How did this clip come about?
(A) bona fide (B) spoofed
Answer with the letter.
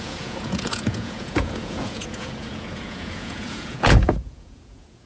B